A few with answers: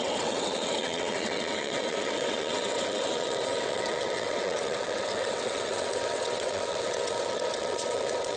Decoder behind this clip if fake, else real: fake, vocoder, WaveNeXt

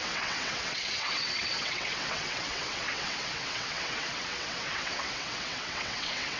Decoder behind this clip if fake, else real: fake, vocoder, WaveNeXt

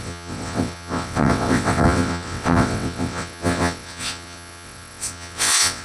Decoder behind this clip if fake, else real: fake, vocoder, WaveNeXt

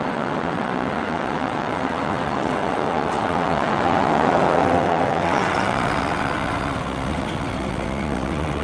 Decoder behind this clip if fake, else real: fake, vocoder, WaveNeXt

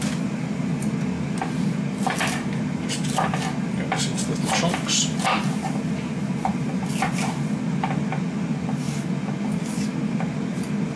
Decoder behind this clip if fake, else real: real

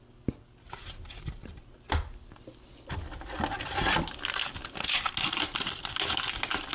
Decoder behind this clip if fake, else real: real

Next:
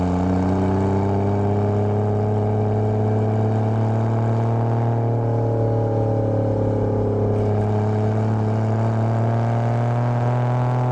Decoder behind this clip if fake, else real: real